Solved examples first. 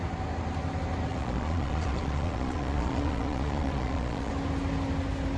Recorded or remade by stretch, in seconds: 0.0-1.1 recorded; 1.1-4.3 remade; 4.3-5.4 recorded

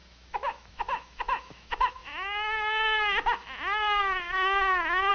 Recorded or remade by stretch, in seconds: 0.0-5.1 remade

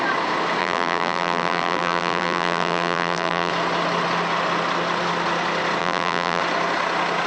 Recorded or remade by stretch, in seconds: 0.0-0.6 recorded; 0.6-3.5 remade; 3.5-5.8 recorded; 5.8-6.4 remade; 6.4-7.3 recorded

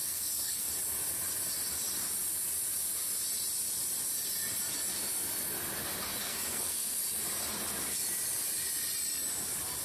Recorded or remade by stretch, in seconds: 0.0-0.7 remade; 0.7-6.2 recorded; 6.2-7.0 remade; 7.0-9.8 recorded

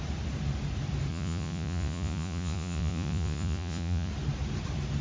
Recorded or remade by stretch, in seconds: 0.0-1.1 recorded; 1.1-4.1 remade; 4.1-5.0 recorded

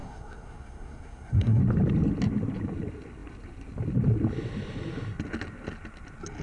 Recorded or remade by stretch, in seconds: 0.0-1.6 remade; 1.6-6.4 recorded

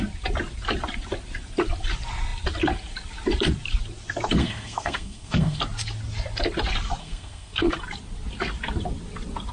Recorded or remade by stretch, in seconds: 0.0-4.4 recorded; 4.4-5.6 remade; 5.6-7.0 recorded; 7.0-7.7 remade; 7.7-9.5 recorded

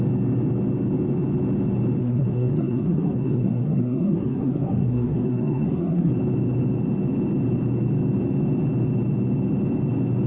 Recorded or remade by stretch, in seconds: 0.0-2.0 recorded; 2.0-6.1 remade; 6.1-10.3 recorded